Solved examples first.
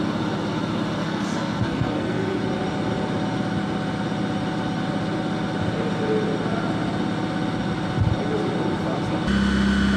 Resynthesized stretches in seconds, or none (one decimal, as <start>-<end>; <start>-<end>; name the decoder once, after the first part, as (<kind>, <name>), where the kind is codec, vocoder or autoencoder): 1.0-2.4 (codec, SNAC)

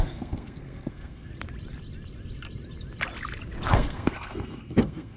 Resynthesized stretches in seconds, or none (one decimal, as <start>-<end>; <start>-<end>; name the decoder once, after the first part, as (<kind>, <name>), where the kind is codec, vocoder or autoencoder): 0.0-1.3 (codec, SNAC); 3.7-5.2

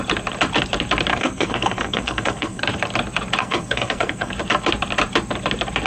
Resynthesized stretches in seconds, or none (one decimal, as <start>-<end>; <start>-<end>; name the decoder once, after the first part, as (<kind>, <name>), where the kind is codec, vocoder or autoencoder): 1.1-2.6 (codec, SNAC); 3.4-4.3